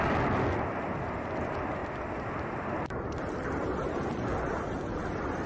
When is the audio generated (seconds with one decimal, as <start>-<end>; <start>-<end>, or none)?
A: none